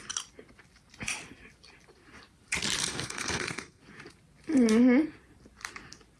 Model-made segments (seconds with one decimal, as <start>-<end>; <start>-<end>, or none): 2.8-3.8